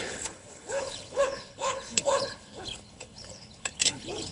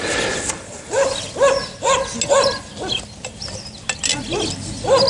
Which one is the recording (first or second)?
second